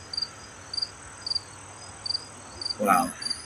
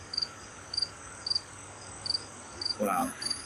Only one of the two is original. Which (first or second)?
first